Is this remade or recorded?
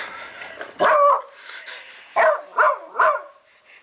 recorded